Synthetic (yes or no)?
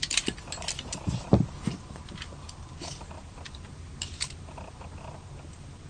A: no